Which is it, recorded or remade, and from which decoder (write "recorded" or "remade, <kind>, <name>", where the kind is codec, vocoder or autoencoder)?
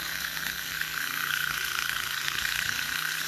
remade, codec, SNAC